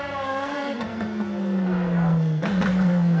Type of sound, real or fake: fake